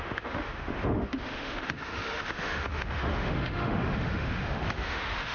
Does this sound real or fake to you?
fake